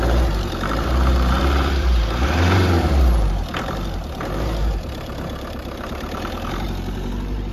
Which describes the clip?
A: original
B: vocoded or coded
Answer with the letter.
B